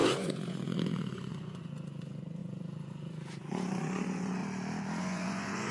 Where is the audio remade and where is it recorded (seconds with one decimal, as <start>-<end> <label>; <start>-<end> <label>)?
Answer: 0.0-4.4 remade; 4.4-5.0 recorded; 5.0-5.7 remade